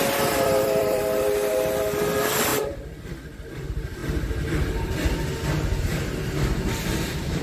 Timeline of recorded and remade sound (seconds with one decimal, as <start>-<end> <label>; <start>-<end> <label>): 0.0-4.0 remade; 4.0-5.8 recorded; 5.8-7.4 remade